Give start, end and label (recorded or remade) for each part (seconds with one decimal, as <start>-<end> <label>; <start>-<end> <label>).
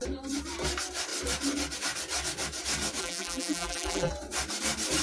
0.0-3.0 recorded; 3.0-4.1 remade; 4.1-5.0 recorded